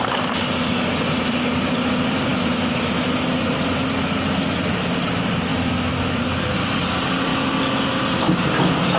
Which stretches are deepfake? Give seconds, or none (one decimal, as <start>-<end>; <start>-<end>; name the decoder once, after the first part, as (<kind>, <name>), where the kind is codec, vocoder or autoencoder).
2.3-2.9 (autoencoder, DAC-VAE); 5.5-6.2